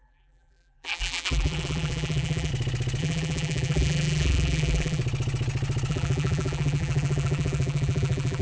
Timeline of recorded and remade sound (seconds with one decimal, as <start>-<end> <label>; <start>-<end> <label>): 0.0-2.5 remade; 2.5-3.0 recorded; 3.0-5.0 remade; 5.0-5.9 recorded; 5.9-8.4 remade